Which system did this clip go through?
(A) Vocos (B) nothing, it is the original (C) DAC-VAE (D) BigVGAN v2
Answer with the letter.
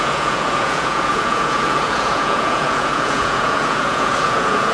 A